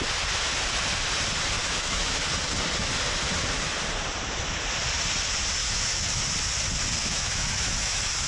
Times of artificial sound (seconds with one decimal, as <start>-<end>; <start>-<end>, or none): 1.6-2.2; 5.6-6.2; 7.0-8.3